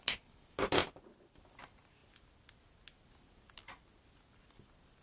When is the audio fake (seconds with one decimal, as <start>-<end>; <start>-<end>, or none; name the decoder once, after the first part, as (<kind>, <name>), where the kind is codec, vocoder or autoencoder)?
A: none